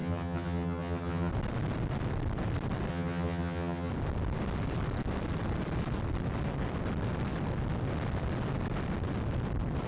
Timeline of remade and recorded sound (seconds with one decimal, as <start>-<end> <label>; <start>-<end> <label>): 0.0-1.3 remade; 1.3-2.9 recorded; 2.9-3.9 remade; 3.9-9.9 recorded